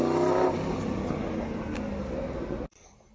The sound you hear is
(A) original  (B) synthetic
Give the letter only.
A